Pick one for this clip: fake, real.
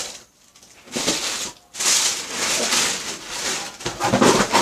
real